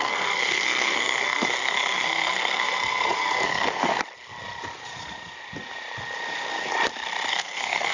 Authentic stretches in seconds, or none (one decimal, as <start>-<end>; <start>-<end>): 3.9-7.3